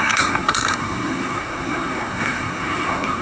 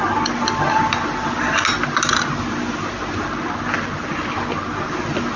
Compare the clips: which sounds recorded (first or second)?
second